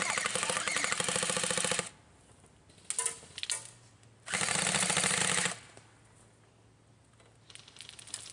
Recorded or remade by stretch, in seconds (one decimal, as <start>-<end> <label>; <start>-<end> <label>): 0.0-8.3 recorded